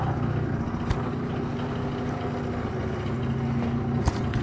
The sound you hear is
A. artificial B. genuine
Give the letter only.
B